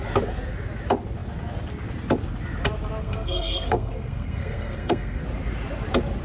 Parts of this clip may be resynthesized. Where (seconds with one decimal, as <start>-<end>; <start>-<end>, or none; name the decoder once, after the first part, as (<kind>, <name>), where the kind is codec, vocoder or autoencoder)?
3.0-5.2 (codec, SNAC)